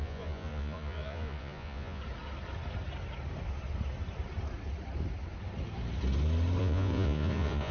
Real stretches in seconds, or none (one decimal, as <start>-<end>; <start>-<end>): 2.0-6.6